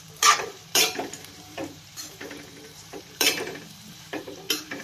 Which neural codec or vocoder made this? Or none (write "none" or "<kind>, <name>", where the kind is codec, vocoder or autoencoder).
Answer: vocoder, BigVGAN v2